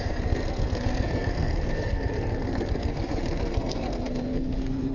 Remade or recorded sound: remade